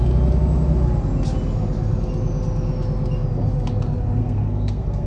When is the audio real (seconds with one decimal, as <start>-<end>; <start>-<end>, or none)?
0.0-4.2